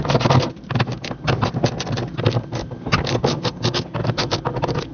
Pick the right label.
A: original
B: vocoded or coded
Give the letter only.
A